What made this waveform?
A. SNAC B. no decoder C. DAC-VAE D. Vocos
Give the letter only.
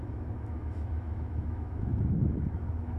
C